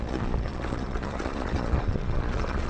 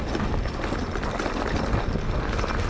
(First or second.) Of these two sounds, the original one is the second